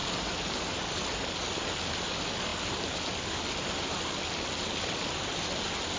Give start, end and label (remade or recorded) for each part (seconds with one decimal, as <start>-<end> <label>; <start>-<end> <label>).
0.0-6.0 recorded